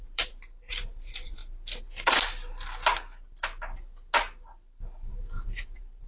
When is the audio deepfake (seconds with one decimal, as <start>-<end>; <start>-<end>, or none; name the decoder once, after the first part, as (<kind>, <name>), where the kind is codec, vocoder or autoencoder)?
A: 0.0-1.4 (vocoder, BigVGAN v2); 5.1-6.1